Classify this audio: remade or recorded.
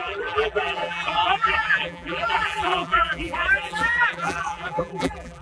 remade